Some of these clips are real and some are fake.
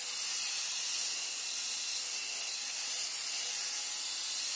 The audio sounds real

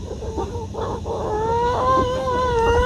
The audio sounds real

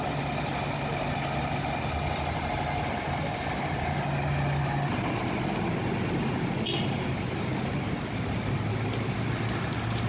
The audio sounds real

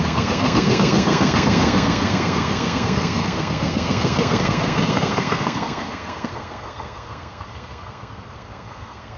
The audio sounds fake